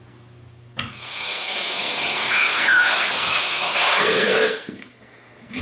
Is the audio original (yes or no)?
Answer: no